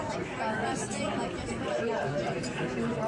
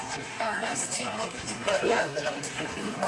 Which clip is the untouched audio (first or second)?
first